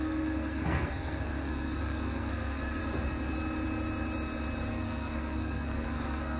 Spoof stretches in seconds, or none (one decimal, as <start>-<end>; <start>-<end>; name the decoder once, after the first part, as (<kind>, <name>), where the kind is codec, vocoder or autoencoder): 0.0-2.8 (codec, SNAC); 4.7-6.4